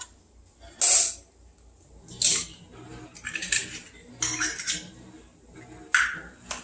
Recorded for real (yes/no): yes